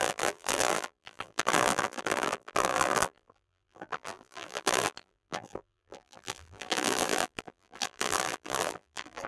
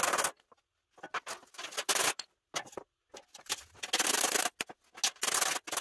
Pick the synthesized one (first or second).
first